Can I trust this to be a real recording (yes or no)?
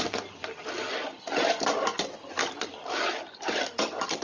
no